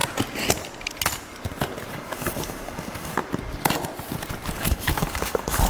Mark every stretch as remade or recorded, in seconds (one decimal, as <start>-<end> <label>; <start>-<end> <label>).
0.0-1.9 recorded; 1.9-3.2 remade; 3.2-4.5 recorded; 4.5-5.7 remade